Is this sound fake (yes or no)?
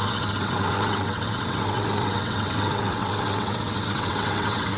yes